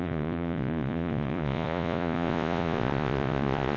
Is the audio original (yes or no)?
no